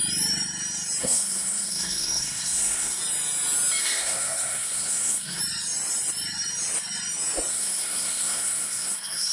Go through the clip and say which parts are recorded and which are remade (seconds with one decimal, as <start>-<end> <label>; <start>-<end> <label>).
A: 0.0-1.0 recorded; 1.0-3.0 remade; 3.0-3.8 recorded; 3.8-5.4 remade; 5.4-7.5 recorded; 7.5-9.3 remade